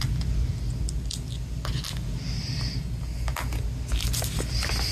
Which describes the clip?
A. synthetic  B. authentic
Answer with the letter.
B